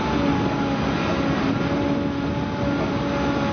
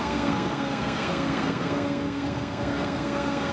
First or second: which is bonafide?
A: first